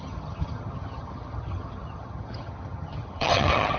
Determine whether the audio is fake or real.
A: fake